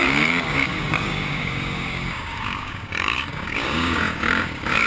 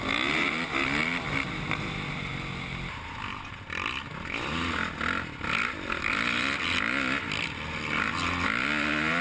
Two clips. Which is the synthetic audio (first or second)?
first